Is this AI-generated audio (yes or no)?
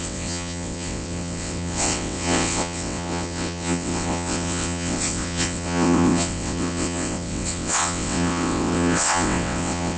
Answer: yes